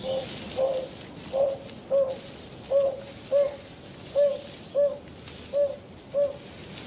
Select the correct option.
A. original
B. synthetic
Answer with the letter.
A